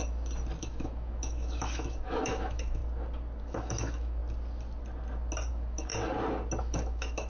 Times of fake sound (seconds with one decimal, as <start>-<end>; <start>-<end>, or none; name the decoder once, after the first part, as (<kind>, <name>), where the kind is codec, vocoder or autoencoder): 0.6-2.8 (autoencoder, DAC-VAE); 3.4-4.2; 5.5-5.9; 6.6-7.3